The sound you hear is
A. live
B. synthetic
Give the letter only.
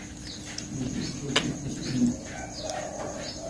A